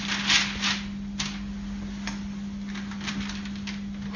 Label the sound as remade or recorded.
recorded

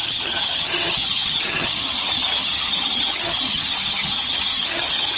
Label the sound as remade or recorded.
remade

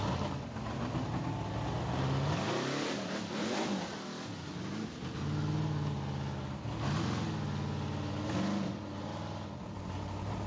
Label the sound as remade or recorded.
recorded